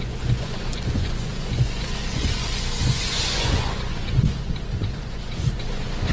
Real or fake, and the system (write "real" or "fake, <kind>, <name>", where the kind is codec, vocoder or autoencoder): fake, vocoder, Vocos